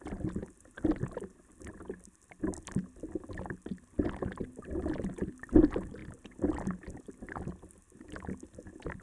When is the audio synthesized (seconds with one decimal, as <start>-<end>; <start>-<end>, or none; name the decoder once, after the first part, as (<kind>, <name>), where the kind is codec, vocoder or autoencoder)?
none

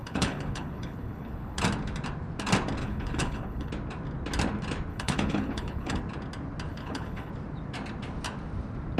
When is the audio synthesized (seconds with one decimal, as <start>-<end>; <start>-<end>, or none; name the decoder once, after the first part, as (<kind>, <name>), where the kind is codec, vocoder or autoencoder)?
0.0-1.6 (codec, HILCodec); 2.8-3.7; 4.9-6.0; 6.7-7.3